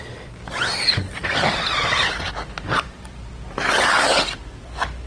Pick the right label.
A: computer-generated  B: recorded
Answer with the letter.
B